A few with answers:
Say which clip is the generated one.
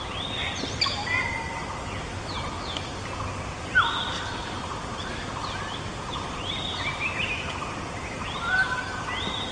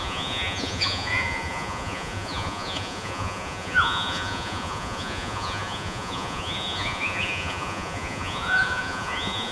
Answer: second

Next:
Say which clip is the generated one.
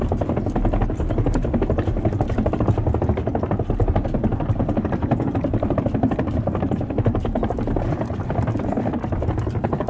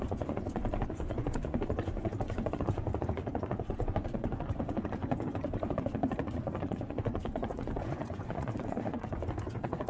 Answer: second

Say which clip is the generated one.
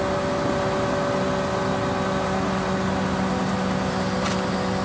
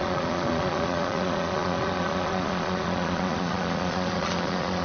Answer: second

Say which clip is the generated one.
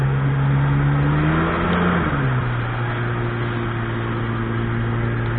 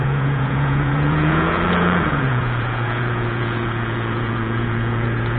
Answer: second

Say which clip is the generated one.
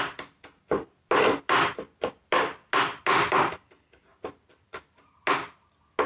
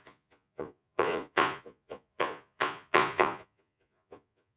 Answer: second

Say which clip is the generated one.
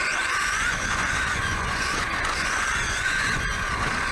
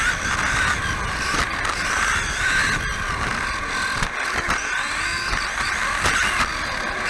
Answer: first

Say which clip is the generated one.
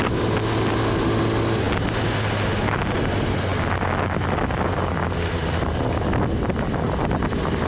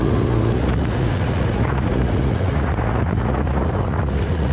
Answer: second